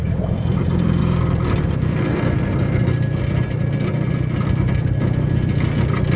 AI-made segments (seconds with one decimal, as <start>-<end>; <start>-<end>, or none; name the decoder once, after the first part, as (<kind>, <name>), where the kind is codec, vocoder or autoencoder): 0.0-1.0 (vocoder, BigVGAN v2)